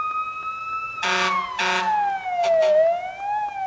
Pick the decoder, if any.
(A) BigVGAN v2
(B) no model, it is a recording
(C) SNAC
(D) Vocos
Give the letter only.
B